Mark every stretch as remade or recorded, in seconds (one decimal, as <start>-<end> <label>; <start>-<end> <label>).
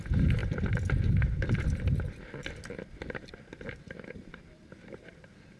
0.0-5.6 recorded